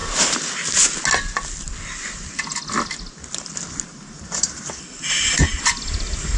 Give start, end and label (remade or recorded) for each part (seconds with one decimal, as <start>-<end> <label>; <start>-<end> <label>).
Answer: 0.0-0.6 remade; 0.6-3.9 recorded; 3.9-5.8 remade; 5.8-6.4 recorded